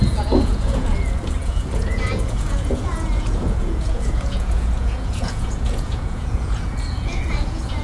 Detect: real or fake fake